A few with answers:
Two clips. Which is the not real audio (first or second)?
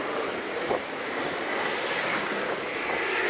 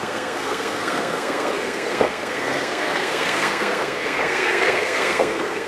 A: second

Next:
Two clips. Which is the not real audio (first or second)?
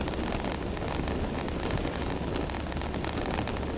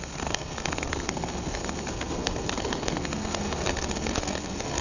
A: second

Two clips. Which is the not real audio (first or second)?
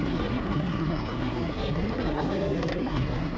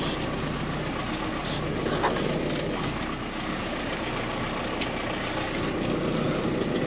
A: first